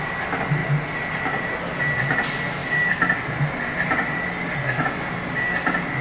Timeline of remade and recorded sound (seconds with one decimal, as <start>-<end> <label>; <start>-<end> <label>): 0.0-6.0 recorded